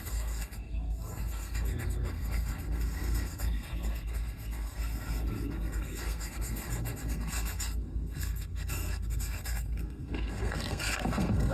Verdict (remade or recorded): remade